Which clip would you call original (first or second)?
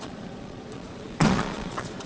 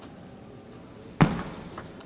second